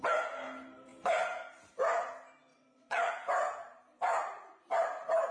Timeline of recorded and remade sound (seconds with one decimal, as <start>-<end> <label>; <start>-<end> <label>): 0.0-2.5 recorded; 2.5-3.1 remade; 3.1-5.3 recorded